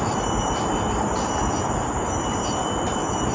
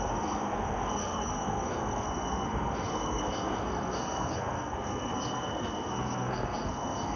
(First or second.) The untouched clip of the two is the first